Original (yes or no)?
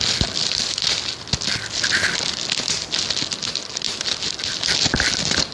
yes